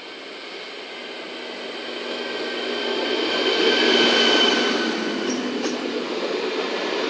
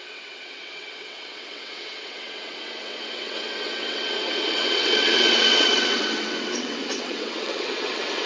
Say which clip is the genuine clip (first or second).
first